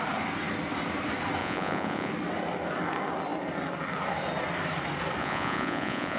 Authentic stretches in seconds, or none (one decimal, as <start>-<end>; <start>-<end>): 0.0-1.4; 2.1-5.2